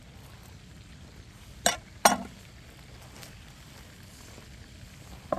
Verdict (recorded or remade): recorded